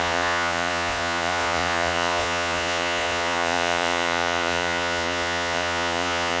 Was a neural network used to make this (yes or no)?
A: yes